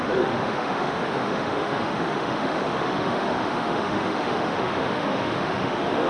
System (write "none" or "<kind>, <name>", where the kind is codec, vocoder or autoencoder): autoencoder, DAC-VAE